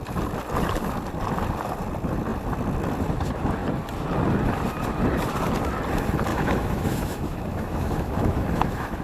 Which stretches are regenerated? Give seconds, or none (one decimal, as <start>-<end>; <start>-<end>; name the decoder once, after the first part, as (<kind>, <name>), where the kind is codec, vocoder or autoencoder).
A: 6.3-9.0 (autoencoder, DAC-VAE)

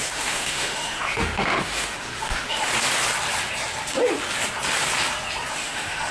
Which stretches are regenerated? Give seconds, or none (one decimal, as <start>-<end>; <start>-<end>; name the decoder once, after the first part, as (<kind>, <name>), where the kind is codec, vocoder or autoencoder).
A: 0.0-2.7 (autoencoder, DAC-VAE); 5.5-6.1

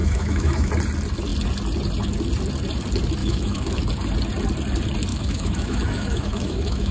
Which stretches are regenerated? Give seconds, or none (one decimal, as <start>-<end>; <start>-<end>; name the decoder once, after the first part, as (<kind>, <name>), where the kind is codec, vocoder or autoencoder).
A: 0.0-0.7 (autoencoder, DAC-VAE); 3.2-3.8; 5.1-6.9

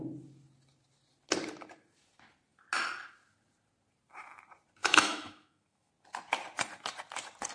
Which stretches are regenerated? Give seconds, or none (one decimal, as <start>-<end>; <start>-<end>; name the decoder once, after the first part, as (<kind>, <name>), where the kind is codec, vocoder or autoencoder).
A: 4.8-5.9 (autoencoder, DAC-VAE)